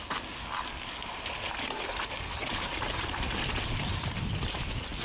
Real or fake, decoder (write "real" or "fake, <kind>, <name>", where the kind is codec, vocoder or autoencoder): real